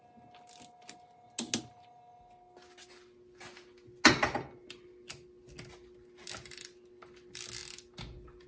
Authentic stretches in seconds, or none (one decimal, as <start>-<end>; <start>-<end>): 0.0-8.5